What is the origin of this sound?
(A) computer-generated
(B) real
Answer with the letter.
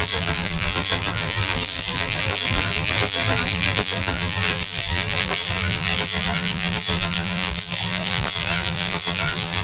A